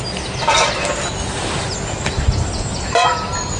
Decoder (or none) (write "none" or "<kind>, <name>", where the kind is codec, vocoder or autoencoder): none